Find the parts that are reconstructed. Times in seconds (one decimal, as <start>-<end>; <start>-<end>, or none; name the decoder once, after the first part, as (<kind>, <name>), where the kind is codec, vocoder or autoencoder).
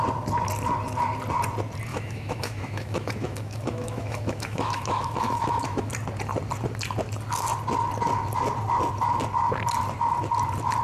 1.9-5.9 (autoencoder, DAC-VAE)